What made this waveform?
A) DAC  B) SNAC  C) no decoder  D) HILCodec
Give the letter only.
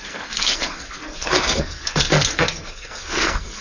B